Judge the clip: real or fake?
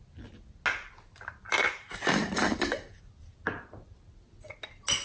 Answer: real